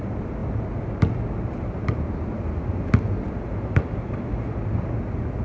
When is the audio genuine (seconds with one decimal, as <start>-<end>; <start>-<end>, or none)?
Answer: 0.0-5.4